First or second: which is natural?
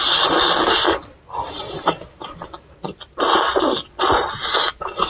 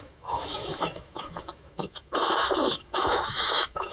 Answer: first